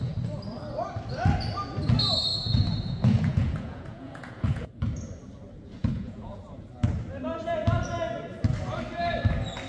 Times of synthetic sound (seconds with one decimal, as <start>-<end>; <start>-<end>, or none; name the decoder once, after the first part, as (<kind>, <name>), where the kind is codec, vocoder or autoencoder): 2.3-4.7 (vocoder, Vocos); 5.8-6.4

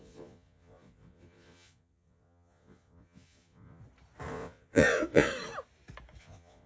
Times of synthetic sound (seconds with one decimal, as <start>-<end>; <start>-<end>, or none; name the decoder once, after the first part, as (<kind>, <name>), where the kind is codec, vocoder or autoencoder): 0.0-3.8 (vocoder, Vocos); 4.3-5.3; 6.2-6.7

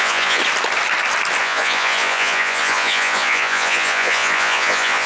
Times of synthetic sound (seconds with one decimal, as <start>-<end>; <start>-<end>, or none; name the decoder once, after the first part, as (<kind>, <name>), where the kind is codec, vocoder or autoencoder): 0.0-0.4 (vocoder, Vocos); 1.4-5.1

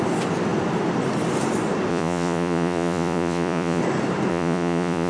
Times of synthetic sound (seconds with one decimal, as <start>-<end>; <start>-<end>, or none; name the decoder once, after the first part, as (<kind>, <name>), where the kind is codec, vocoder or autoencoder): 1.9-3.8 (vocoder, Vocos); 4.3-5.1

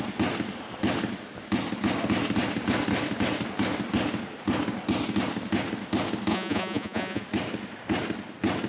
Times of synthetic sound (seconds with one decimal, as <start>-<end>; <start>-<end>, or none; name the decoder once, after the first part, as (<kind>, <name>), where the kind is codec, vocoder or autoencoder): 6.3-7.2 (vocoder, Vocos)

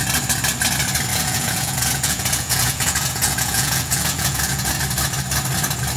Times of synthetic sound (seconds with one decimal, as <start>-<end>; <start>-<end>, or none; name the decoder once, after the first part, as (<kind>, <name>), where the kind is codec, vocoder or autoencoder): 1.1-4.7 (vocoder, Vocos)

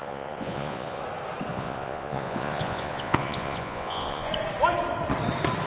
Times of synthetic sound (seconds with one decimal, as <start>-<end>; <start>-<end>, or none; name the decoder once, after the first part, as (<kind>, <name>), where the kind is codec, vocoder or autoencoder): 0.0-1.0 (vocoder, Vocos); 1.5-4.3

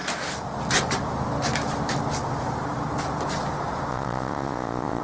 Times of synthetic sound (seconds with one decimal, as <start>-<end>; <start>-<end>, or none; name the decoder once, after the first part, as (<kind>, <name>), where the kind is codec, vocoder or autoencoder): 3.9-5.0 (vocoder, Vocos)